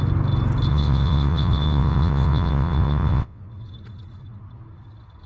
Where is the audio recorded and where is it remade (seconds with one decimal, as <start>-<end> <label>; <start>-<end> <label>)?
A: 0.0-0.7 recorded; 0.7-3.4 remade; 3.4-5.3 recorded